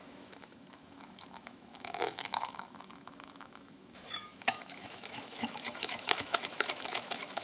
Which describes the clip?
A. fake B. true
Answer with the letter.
A